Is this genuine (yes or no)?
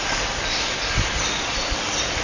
yes